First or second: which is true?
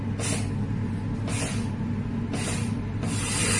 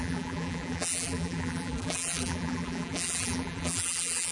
first